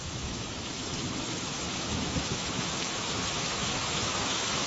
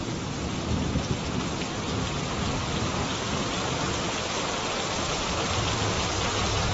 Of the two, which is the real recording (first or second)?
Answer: second